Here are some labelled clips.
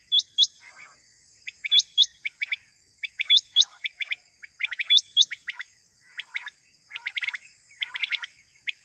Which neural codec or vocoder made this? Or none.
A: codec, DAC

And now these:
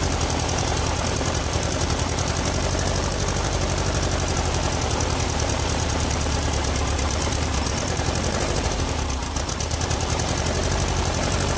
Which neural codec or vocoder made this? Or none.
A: vocoder, BigVGAN v2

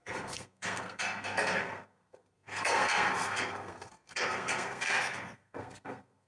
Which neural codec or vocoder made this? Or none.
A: codec, SNAC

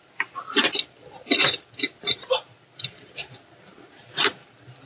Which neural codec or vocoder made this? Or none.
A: none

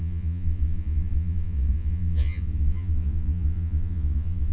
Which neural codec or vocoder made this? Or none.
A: vocoder, Vocos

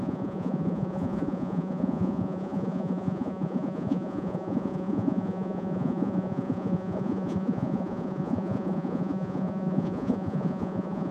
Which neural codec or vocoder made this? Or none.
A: vocoder, Vocos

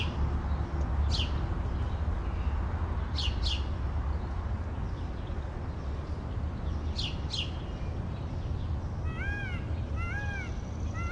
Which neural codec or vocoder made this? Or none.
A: none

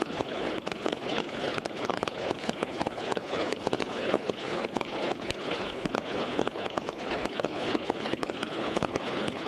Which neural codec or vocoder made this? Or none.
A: codec, HILCodec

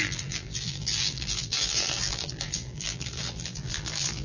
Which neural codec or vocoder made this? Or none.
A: vocoder, BigVGAN v2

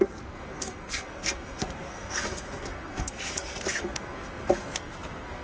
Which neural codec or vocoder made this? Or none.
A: codec, SNAC